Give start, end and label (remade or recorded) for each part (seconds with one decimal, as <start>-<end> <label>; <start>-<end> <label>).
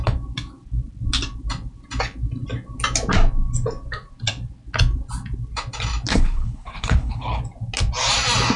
0.0-6.1 recorded; 6.1-7.4 remade; 7.4-8.6 recorded